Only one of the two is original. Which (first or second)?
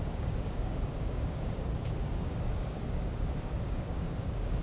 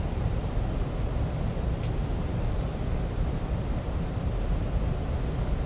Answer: second